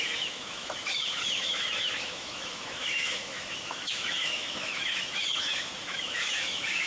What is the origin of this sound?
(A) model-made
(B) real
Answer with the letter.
A